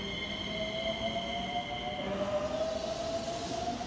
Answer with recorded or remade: recorded